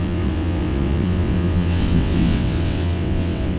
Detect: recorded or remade remade